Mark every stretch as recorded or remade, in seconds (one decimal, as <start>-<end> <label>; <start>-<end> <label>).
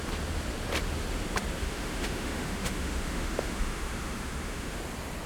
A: 0.0-1.6 recorded; 1.6-4.8 remade; 4.8-5.3 recorded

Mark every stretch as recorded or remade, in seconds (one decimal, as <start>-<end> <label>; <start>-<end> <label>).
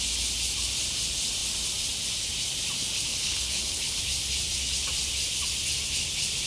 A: 0.0-3.1 recorded; 3.1-4.0 remade; 4.0-6.5 recorded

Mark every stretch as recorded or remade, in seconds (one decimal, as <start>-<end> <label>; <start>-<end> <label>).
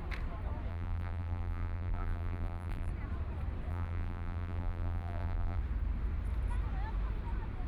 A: 0.0-0.7 recorded; 0.7-2.9 remade; 2.9-3.7 recorded; 3.7-5.6 remade; 5.6-7.7 recorded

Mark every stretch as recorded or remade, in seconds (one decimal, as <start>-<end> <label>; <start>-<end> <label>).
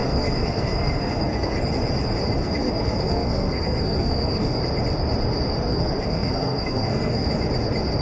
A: 0.0-1.6 remade; 1.6-2.4 recorded; 2.4-4.6 remade; 4.6-5.7 recorded; 5.7-7.3 remade; 7.3-8.0 recorded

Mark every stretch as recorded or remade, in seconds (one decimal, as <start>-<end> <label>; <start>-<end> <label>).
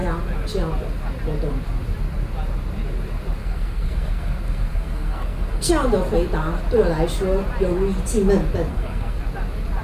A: 0.0-3.4 recorded; 3.4-5.7 remade; 5.7-8.7 recorded; 8.7-9.2 remade; 9.2-9.8 recorded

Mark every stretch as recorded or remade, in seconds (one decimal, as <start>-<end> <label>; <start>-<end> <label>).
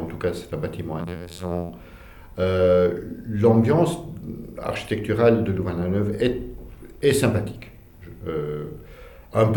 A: 0.0-1.0 recorded; 1.0-1.7 remade; 1.7-9.6 recorded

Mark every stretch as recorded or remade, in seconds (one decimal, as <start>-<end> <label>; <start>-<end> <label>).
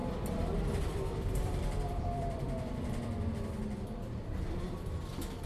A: 0.0-3.3 remade; 3.3-5.5 recorded